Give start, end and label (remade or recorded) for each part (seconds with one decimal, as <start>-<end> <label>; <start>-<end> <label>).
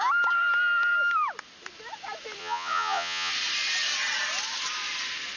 0.0-2.4 recorded; 2.4-3.3 remade; 3.3-5.4 recorded